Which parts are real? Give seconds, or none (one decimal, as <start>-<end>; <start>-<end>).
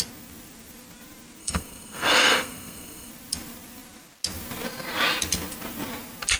0.0-1.4; 3.1-6.4